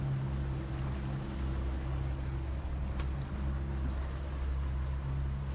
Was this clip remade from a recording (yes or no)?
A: no